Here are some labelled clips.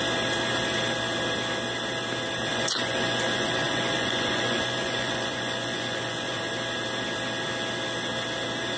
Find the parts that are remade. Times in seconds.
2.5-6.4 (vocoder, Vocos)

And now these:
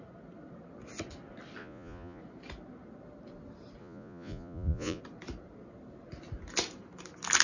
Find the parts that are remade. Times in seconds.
1.6-2.2 (vocoder, Vocos); 3.8-5.0

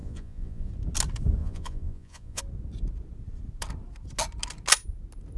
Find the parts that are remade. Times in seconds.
0.0-0.7 (vocoder, Vocos); 1.4-2.4

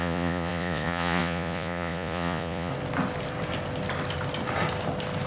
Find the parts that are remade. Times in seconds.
0.0-2.7 (vocoder, Vocos)

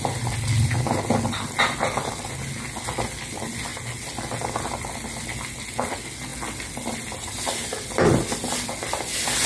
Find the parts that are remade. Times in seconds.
none